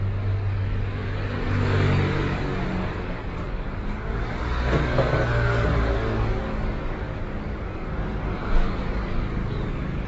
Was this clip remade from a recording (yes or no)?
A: yes